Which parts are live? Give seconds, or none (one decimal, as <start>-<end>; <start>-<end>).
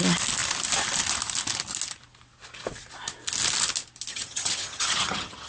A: 0.0-4.1